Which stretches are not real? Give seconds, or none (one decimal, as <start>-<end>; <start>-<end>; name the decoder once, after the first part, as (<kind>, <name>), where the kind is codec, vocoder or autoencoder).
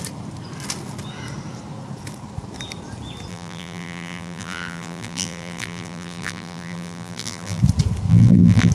3.3-7.6 (vocoder, BigVGAN v2); 8.1-8.7